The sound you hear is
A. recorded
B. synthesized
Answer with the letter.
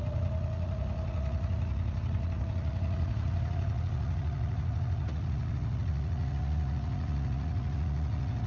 B